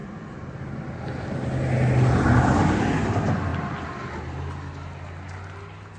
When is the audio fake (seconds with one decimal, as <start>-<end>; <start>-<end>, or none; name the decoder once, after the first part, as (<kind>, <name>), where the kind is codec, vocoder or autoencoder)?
none